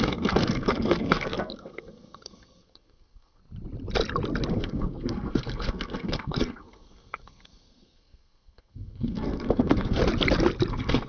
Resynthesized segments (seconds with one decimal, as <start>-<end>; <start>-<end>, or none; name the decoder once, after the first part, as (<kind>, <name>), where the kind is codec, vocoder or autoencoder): 0.0-3.4 (codec, SNAC); 4.5-10.0; 10.7-11.1

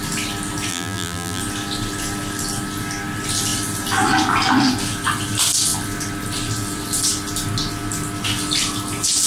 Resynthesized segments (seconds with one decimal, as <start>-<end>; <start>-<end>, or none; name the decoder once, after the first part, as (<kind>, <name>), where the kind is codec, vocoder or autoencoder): 0.7-1.4 (vocoder, BigVGAN v2)

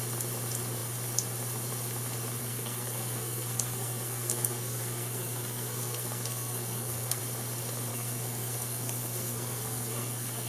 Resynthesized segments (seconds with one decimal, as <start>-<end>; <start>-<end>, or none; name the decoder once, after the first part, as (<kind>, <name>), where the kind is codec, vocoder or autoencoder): 2.4-7.2 (codec, SNAC); 7.9-10.5

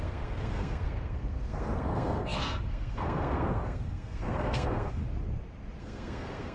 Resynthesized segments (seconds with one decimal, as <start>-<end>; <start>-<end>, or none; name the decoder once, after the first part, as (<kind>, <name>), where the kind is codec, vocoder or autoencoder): 0.0-5.0 (codec, SNAC); 5.8-6.5